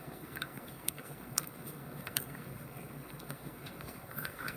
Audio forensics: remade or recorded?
remade